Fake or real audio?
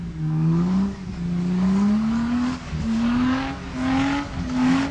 fake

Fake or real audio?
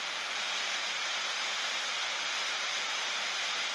real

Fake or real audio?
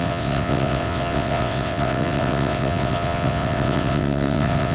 fake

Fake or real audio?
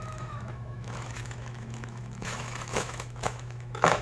fake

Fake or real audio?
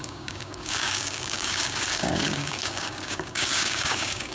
fake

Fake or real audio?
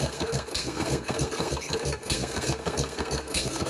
fake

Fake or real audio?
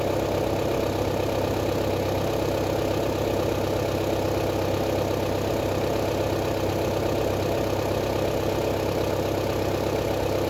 real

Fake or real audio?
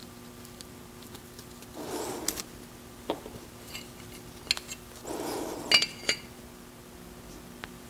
real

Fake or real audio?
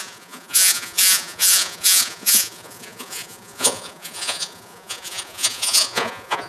fake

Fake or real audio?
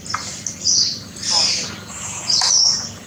real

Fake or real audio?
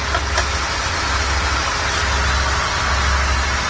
real